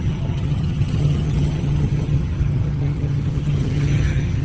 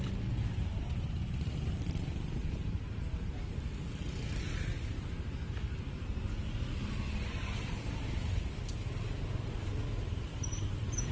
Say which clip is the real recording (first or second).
second